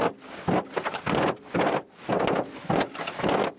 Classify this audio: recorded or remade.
recorded